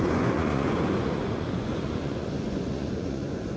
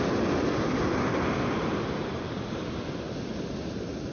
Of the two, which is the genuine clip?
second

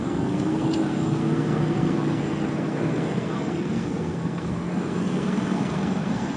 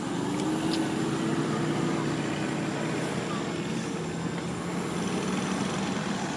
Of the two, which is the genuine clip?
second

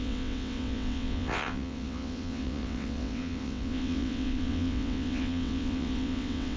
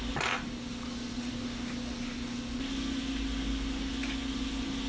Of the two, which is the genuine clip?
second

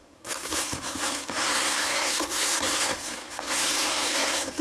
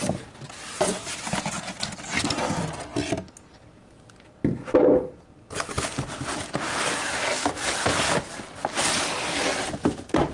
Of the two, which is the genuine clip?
second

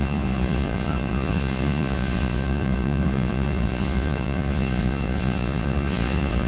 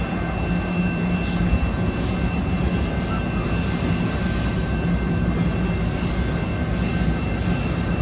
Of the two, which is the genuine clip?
second